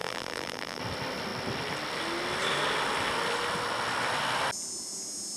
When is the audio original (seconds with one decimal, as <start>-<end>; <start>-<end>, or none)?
0.8-5.4